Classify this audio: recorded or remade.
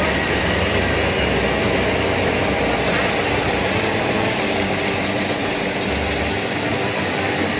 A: remade